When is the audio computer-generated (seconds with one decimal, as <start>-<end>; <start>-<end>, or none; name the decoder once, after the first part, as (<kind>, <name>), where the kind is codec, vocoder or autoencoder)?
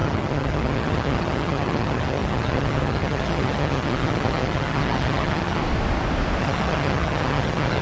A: 0.0-5.6 (vocoder, HiFi-GAN); 6.4-7.8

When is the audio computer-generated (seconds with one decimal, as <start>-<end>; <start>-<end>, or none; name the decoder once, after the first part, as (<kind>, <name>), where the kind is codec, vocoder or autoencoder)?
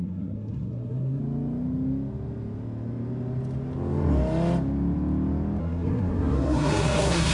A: 0.0-1.2 (codec, SNAC); 5.6-7.3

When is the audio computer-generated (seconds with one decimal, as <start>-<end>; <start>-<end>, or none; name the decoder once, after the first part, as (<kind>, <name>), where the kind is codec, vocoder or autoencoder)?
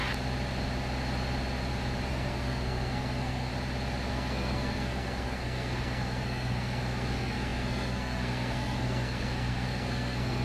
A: 2.1-3.5 (codec, SNAC); 4.1-10.4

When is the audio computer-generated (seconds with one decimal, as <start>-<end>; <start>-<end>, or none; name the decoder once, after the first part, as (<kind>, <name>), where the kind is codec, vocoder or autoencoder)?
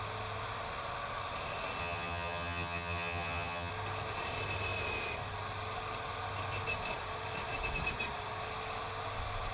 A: 1.8-3.7 (vocoder, HiFi-GAN)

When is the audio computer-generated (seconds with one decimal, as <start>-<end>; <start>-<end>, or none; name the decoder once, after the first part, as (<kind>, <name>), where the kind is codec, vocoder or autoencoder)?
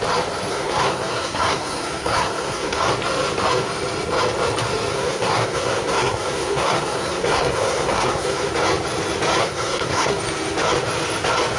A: 0.5-2.9 (codec, SNAC); 4.9-8.5; 9.4-10.2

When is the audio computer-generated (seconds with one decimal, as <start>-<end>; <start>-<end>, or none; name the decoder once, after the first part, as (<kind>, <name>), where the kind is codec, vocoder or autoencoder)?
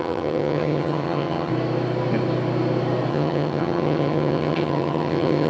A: 0.0-1.5 (vocoder, HiFi-GAN); 3.1-5.5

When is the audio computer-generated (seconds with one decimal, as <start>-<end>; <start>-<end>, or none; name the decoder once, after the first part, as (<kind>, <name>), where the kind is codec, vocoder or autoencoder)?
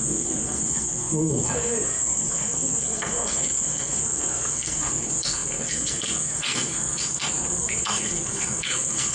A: 0.0-9.1 (codec, SNAC)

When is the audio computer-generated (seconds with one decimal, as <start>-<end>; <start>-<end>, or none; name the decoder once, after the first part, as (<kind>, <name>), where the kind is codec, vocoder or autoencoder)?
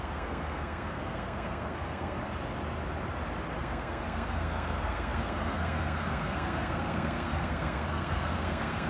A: 0.0-2.3 (codec, SNAC); 3.6-8.9